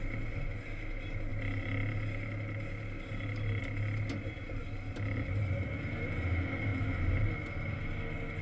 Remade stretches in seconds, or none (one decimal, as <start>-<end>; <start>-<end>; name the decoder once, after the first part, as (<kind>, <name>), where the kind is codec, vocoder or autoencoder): 6.7-7.3 (vocoder, BigVGAN v2)